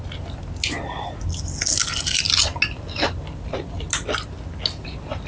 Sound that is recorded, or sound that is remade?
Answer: recorded